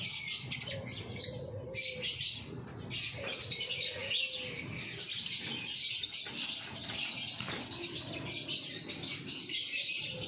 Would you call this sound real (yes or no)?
yes